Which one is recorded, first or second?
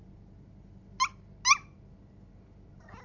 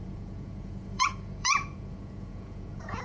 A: first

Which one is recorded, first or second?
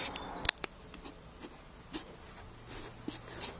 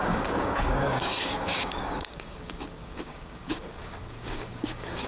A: first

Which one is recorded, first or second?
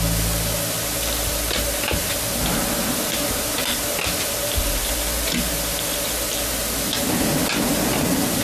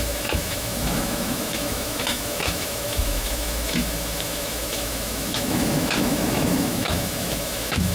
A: first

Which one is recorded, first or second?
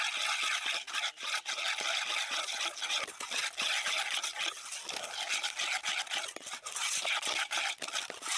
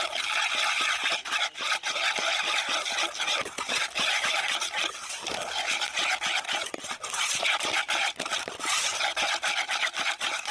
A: first